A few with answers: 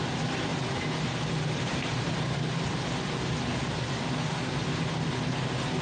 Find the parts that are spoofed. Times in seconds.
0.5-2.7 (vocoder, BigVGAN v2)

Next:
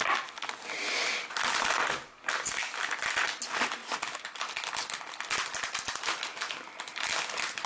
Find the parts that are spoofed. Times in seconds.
none

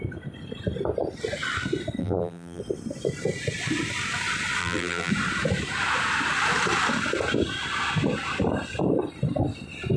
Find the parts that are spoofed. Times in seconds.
2.0-2.6 (vocoder, BigVGAN v2); 4.6-5.1